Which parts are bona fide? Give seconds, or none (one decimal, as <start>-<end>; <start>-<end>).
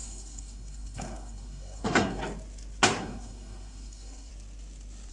2.2-3.0; 4.3-5.1